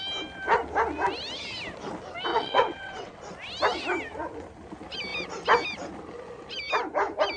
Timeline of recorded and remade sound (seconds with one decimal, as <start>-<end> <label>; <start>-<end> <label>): 0.0-2.3 recorded; 2.3-3.2 remade; 3.2-7.4 recorded